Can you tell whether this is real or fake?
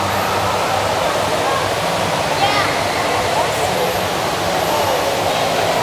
real